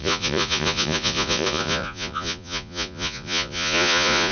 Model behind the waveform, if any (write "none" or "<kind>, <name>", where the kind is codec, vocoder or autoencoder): vocoder, Vocos